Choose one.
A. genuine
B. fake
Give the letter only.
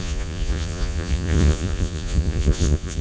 B